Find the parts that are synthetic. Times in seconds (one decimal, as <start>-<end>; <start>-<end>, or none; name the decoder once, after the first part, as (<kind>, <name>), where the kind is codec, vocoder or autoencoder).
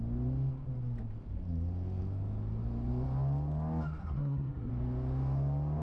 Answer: 4.0-4.7 (codec, SNAC)